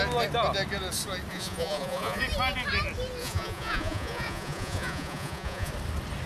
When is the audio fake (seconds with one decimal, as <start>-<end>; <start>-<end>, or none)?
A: 1.3-2.2; 3.2-5.7